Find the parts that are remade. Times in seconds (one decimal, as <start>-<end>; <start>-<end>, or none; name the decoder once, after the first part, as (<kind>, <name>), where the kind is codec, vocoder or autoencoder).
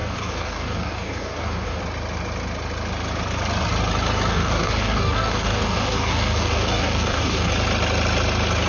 0.0-1.8 (codec, DAC); 4.3-7.5